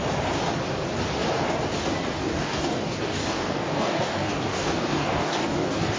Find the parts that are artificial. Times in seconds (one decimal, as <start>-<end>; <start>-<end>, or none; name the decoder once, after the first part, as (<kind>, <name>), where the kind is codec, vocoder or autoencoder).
2.2-6.0 (codec, DAC)